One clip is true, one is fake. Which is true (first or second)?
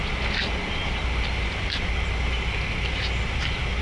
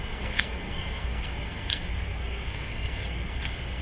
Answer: first